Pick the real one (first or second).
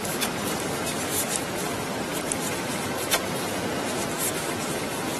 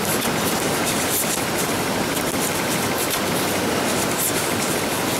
second